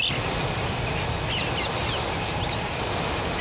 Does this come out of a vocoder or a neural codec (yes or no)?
no